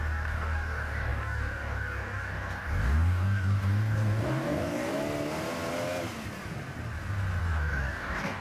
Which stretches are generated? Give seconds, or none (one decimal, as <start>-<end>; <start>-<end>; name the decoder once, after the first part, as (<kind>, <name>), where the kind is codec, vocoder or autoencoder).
0.0-5.0 (codec, DAC); 7.4-8.4